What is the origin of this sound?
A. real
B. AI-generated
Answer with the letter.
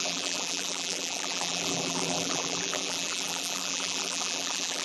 B